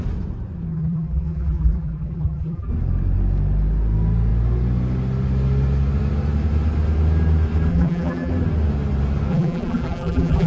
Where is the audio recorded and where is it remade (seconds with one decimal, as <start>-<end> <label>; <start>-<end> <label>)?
0.0-0.7 recorded; 0.7-2.7 remade; 2.7-7.7 recorded; 7.7-8.3 remade; 8.3-9.3 recorded; 9.3-10.5 remade